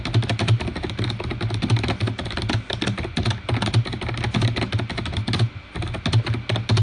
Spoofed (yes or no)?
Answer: no